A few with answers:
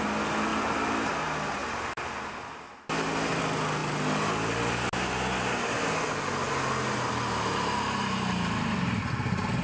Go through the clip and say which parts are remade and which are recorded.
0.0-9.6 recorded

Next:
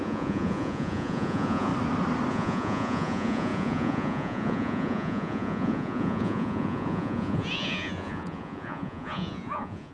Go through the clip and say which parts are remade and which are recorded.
0.0-1.7 remade; 1.7-2.3 recorded; 2.3-9.9 remade

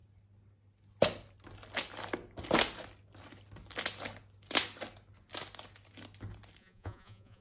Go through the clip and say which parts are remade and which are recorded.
0.0-6.6 recorded; 6.6-7.4 remade

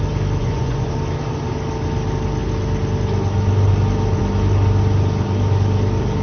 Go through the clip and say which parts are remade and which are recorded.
0.0-0.4 recorded; 0.4-0.9 remade; 0.9-6.2 recorded

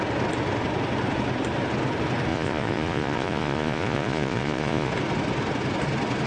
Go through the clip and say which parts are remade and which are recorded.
0.0-2.3 recorded; 2.3-4.9 remade; 4.9-6.3 recorded